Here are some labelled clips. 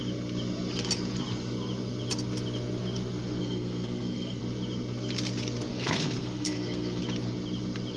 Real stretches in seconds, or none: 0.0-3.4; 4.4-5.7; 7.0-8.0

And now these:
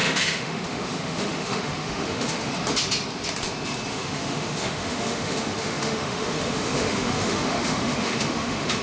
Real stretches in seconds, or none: 2.5-3.9

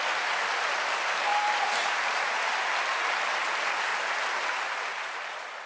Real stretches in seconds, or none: 0.0-1.3; 2.5-3.9; 5.3-5.7

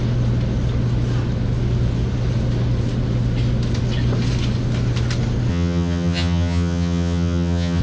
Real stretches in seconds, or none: 0.0-5.5

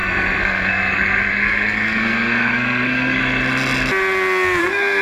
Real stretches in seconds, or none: 3.2-4.6

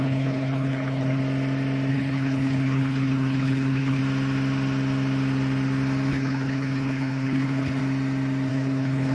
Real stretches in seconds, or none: 1.2-1.9; 4.0-6.1; 7.8-8.5